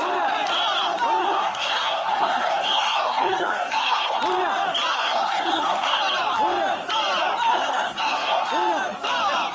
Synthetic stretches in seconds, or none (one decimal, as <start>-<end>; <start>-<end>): 1.2-4.2; 4.9-6.0; 7.5-8.5